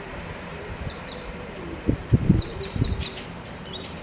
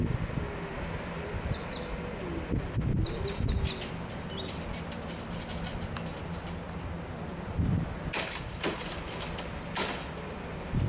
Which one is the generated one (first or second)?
first